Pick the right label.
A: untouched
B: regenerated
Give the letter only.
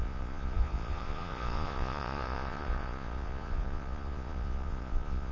B